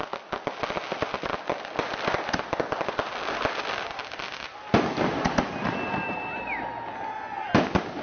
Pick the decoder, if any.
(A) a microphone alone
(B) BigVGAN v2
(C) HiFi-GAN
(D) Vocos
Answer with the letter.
A